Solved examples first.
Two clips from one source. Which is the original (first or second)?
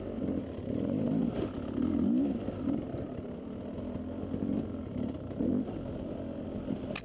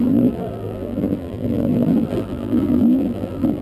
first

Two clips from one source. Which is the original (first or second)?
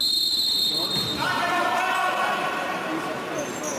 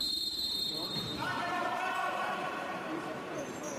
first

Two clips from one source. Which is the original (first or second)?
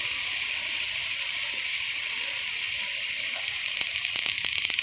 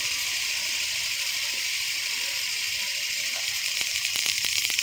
first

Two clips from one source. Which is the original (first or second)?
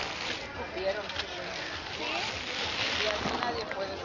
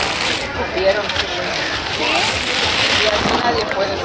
first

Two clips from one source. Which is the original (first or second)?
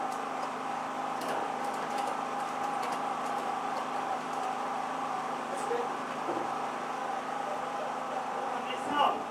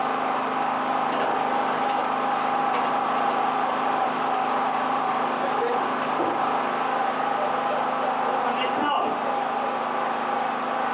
second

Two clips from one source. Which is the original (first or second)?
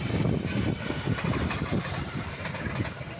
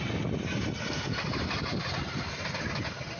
second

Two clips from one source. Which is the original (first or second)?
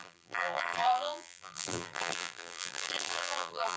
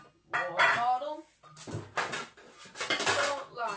second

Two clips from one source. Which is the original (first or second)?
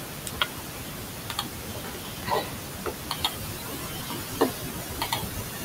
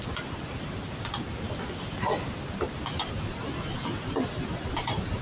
first